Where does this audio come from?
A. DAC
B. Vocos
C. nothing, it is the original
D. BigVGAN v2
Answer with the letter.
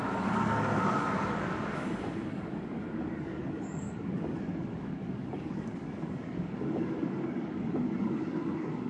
A